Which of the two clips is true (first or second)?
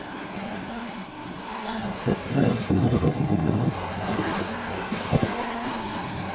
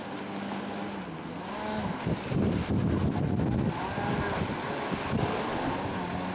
second